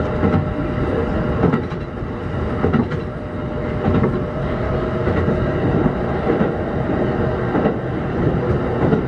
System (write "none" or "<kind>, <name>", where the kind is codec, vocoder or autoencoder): none